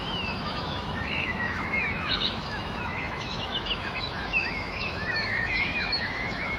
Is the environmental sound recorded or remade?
remade